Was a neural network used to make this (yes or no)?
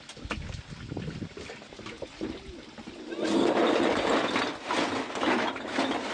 no